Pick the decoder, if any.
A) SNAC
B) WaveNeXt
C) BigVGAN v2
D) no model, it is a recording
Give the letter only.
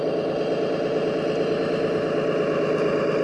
D